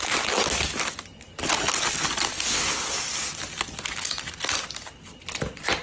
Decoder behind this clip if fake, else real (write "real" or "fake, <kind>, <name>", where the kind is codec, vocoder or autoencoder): real